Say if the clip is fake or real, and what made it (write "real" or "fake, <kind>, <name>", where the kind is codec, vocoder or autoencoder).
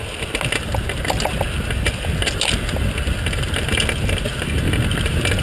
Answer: real